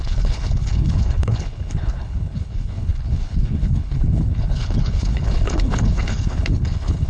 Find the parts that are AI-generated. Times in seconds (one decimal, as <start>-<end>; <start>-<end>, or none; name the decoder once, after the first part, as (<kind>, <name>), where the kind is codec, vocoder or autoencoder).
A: 0.0-7.1 (codec, HILCodec)